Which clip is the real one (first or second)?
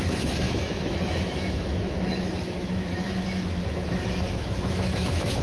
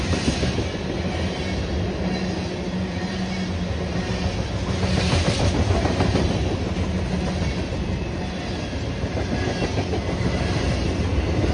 second